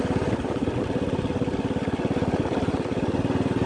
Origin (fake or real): real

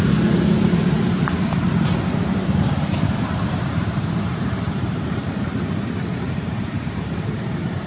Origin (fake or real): fake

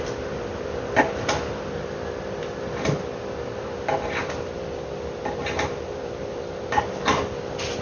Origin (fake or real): real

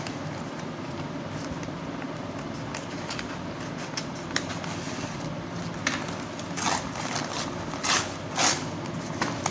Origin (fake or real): real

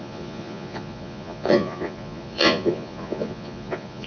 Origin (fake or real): fake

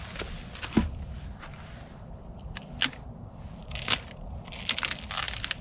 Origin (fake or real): real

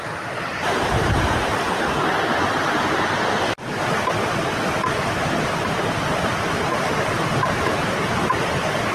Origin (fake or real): real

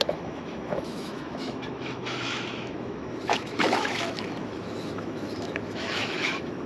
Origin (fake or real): fake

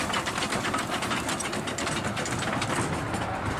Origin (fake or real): fake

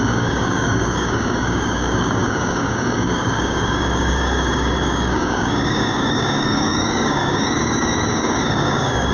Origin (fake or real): fake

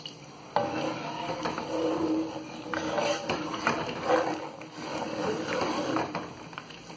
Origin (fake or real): real